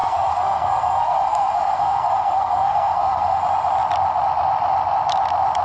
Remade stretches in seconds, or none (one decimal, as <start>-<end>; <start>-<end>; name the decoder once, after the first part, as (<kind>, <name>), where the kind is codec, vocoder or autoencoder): 0.0-3.4 (codec, SNAC)